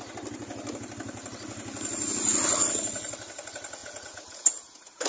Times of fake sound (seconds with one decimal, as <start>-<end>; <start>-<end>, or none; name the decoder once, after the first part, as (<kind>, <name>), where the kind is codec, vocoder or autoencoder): 3.8-5.1 (vocoder, Vocos)